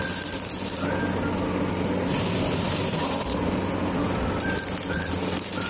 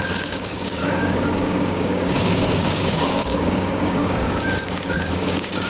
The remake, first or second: second